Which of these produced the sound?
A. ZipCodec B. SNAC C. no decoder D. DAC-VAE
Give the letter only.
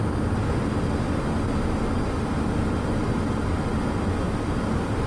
C